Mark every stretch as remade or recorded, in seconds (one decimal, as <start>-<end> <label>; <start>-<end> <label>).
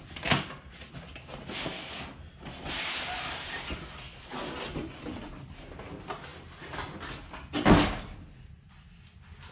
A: 0.0-9.5 recorded